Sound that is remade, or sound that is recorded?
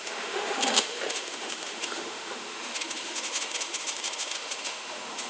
remade